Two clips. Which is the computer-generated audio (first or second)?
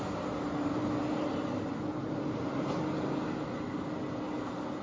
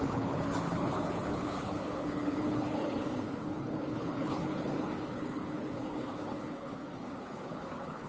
second